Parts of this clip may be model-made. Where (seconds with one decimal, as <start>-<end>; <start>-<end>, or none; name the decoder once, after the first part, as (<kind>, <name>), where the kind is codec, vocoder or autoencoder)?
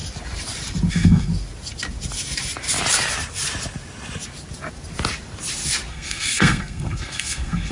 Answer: 0.9-1.3 (codec, SNAC); 5.9-7.7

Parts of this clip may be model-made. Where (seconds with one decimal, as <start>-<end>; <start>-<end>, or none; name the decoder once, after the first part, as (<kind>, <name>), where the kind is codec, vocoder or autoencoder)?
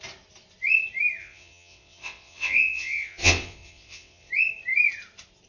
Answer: 1.2-4.3 (vocoder, WaveNeXt)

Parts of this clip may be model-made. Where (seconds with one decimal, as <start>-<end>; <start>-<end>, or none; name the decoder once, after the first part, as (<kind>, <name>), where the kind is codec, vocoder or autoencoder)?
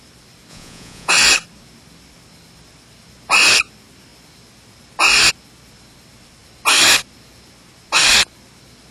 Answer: 0.5-1.1 (vocoder, Vocos)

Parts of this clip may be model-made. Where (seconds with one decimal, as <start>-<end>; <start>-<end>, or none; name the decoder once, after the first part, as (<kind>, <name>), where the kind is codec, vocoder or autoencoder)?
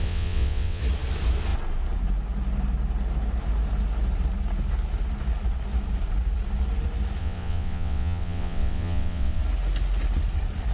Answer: 0.0-0.8 (vocoder, WaveNeXt); 7.2-9.4